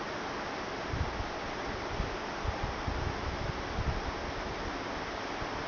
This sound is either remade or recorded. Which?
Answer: recorded